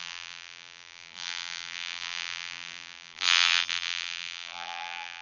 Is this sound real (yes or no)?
no